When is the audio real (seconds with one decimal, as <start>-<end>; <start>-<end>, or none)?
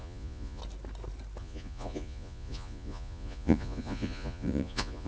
0.6-1.4